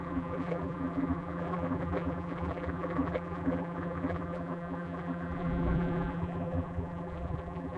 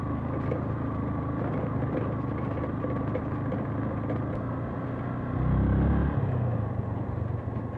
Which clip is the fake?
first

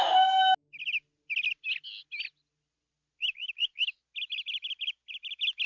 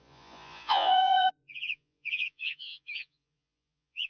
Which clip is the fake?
second